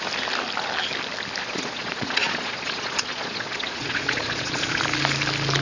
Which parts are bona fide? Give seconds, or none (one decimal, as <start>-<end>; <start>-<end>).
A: 0.0-1.4; 4.8-5.6